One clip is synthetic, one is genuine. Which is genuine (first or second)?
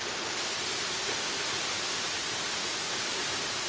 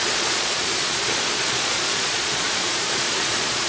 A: first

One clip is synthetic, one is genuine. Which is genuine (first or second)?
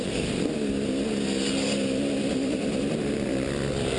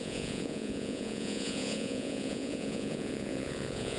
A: first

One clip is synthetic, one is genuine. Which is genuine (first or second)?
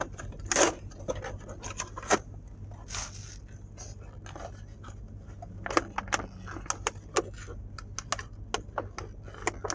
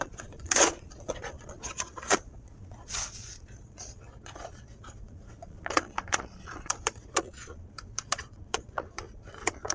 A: first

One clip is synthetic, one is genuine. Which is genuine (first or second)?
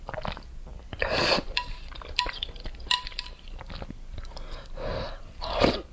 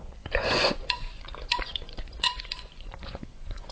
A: first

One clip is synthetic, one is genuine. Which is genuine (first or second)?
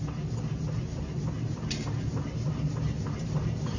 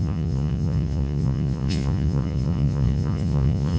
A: first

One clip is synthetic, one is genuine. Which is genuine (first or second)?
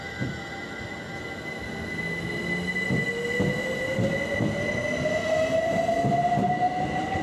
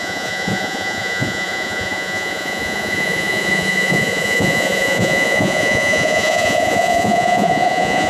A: first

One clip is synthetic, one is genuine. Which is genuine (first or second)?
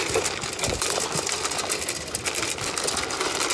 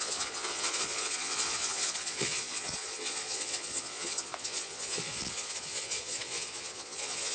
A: first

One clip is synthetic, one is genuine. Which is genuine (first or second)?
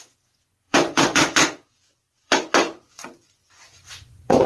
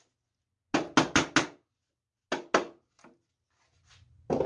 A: second